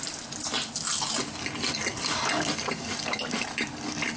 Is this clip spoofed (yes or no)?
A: no